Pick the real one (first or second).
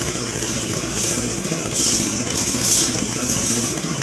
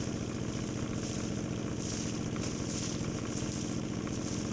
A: second